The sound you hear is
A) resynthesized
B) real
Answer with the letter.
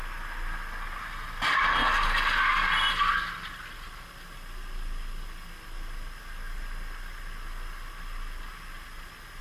B